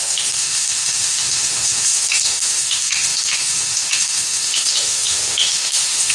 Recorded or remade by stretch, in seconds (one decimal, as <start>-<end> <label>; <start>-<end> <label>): 0.0-6.1 remade